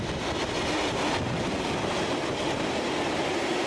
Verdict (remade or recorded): recorded